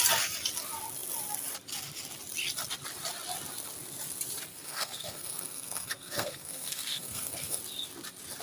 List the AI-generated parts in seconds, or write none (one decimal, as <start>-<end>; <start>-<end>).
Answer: 4.5-7.6